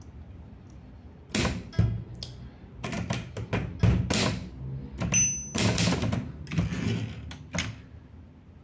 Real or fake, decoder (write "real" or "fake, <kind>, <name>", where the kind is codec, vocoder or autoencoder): real